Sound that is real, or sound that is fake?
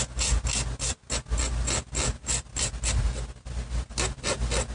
real